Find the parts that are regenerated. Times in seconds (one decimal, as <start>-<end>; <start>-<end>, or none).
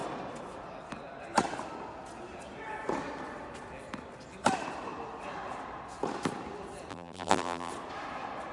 6.9-7.7